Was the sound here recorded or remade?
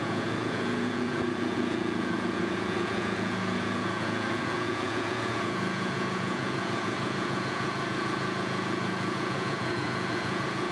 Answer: remade